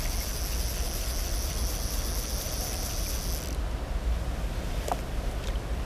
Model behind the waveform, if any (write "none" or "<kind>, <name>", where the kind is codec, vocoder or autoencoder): none